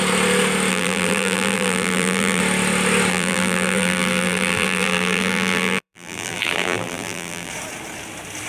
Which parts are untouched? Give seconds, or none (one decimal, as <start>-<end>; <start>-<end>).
0.0-0.7; 2.4-3.1; 7.5-8.5